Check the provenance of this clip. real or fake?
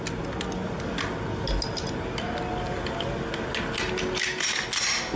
real